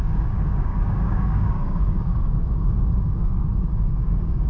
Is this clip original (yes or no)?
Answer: no